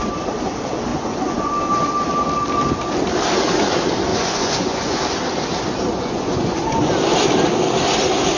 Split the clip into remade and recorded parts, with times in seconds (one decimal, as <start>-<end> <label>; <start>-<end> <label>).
0.0-0.9 recorded; 0.9-1.5 remade; 1.5-4.1 recorded; 4.1-5.0 remade; 5.0-5.9 recorded; 5.9-6.9 remade; 6.9-8.4 recorded